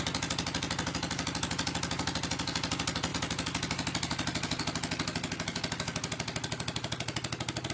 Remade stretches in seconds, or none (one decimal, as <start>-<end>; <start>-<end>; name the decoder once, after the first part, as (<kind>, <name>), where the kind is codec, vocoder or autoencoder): none